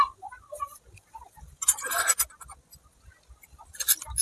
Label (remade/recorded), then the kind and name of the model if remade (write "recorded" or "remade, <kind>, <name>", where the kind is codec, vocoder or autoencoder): recorded